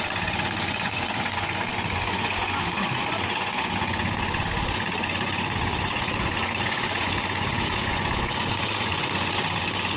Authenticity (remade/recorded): remade